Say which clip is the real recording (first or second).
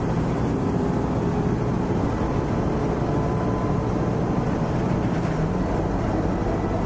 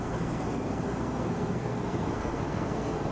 first